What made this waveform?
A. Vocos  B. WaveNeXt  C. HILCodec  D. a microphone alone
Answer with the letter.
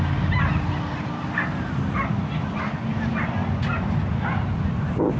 D